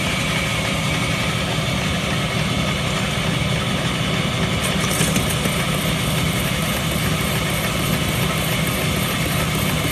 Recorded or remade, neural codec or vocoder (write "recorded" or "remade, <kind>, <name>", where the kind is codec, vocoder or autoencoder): recorded